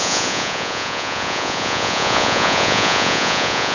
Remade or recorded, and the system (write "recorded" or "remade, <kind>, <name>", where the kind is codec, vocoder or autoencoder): remade, vocoder, Vocos